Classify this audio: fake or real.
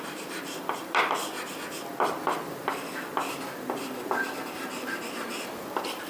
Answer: fake